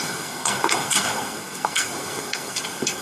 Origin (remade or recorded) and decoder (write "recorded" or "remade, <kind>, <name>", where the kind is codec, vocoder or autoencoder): remade, codec, SNAC